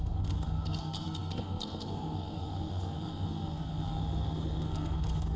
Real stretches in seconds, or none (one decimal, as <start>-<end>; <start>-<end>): none